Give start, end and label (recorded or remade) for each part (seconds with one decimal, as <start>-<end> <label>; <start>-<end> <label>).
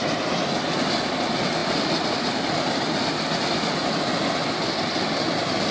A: 0.0-5.7 recorded